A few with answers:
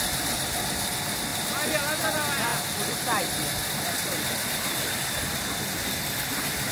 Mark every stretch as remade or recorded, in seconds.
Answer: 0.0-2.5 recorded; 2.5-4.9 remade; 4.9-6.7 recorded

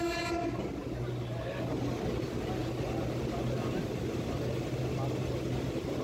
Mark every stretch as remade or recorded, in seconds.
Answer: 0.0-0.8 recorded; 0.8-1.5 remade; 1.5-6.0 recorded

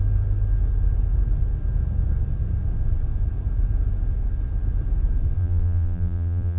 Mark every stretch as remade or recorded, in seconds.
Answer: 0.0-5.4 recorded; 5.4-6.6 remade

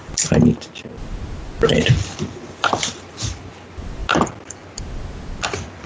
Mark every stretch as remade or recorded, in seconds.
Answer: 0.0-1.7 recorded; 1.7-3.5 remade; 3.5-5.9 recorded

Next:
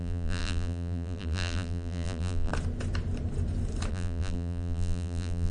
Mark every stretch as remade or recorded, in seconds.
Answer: 0.0-2.5 remade; 2.5-3.9 recorded; 3.9-5.5 remade

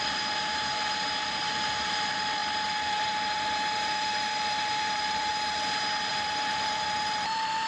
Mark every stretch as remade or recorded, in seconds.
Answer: 0.0-5.3 remade; 5.3-6.1 recorded; 6.1-7.7 remade